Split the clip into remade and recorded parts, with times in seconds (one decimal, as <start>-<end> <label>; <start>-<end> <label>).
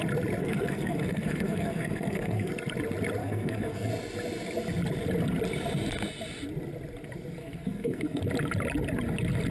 0.0-0.4 recorded; 0.4-2.5 remade; 2.5-3.2 recorded; 3.2-3.9 remade; 3.9-7.4 recorded; 7.4-8.2 remade; 8.2-9.5 recorded